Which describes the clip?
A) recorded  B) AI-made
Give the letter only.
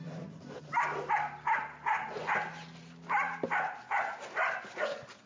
A